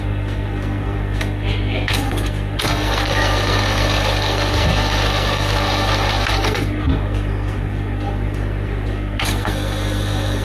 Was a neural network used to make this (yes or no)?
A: yes